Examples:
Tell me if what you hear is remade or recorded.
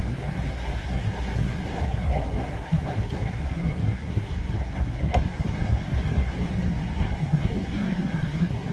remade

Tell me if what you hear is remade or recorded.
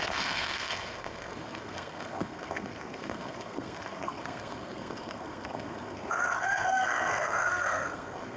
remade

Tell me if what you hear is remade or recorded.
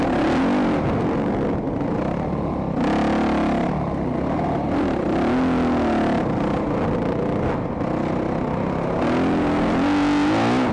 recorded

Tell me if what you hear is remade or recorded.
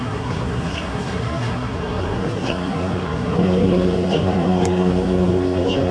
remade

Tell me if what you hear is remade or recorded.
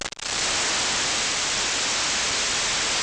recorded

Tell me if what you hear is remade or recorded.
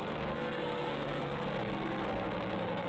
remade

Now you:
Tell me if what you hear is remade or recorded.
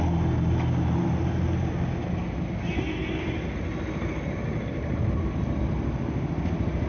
recorded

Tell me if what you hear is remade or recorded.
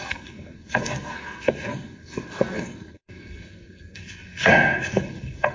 remade